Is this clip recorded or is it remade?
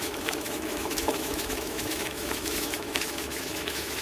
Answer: remade